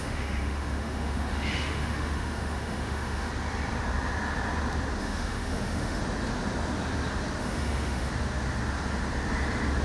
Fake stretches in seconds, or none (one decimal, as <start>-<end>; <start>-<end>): 0.0-3.3; 5.0-6.0; 7.4-8.1